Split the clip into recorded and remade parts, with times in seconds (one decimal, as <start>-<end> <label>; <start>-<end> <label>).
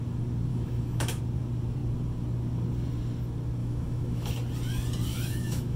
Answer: 0.0-0.5 recorded; 0.5-1.2 remade; 1.2-3.6 recorded; 3.6-4.3 remade; 4.3-5.1 recorded; 5.1-5.8 remade